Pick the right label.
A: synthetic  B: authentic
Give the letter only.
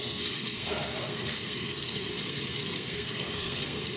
A